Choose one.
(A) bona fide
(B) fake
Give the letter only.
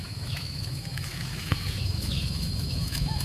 B